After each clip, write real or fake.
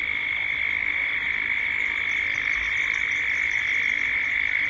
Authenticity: real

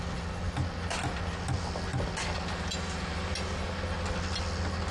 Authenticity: real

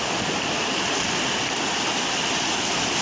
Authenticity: real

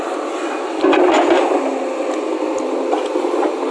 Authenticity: real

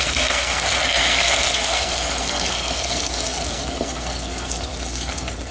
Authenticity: fake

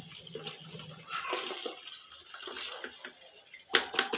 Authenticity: real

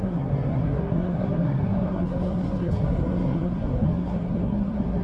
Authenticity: fake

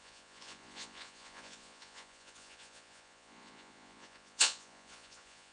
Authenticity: fake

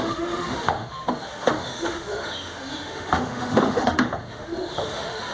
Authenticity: fake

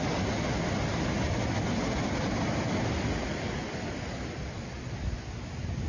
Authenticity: real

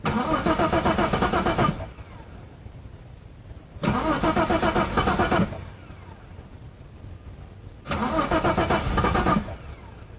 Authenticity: real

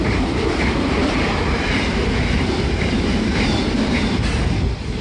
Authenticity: real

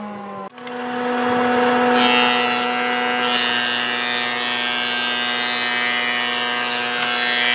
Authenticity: real